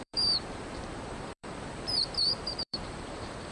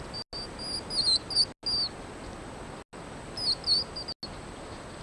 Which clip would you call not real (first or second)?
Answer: first